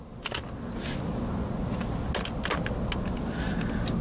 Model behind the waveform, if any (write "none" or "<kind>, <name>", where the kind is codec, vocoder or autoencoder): none